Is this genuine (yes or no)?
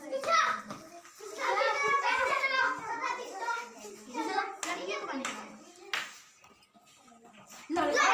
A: yes